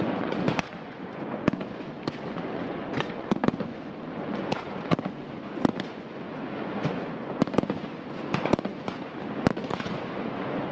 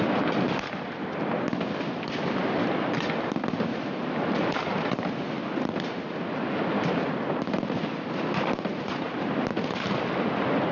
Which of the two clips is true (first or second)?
second